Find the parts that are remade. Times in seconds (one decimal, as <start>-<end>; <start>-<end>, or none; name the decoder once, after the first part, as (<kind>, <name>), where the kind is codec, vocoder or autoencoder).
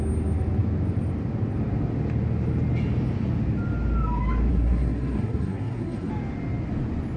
4.5-6.1 (codec, SNAC)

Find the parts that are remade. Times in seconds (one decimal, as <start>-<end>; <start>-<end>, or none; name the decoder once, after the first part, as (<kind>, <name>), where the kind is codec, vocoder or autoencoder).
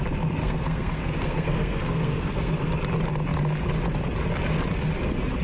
0.4-2.7 (codec, SNAC)